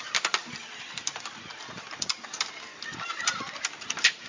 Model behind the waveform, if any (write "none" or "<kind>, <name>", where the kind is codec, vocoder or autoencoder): none